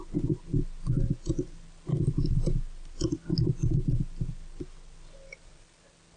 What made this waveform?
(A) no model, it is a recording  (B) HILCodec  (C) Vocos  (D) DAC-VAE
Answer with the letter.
A